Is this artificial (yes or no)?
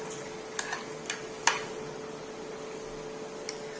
no